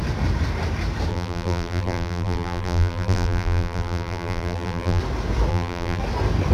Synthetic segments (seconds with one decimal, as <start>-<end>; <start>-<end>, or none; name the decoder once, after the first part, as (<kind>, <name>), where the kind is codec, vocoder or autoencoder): 1.1-5.0 (vocoder, BigVGAN v2); 5.5-6.0

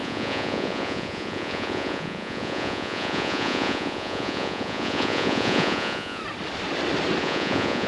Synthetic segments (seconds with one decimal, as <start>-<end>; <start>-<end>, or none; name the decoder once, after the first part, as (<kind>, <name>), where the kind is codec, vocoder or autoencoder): 0.0-6.2 (vocoder, Vocos); 7.2-7.9

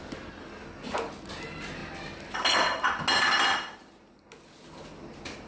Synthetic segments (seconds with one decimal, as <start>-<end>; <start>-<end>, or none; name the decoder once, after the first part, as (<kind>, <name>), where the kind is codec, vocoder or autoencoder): none